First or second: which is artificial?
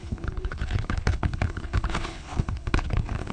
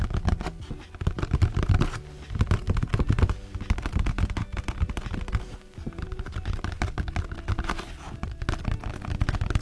first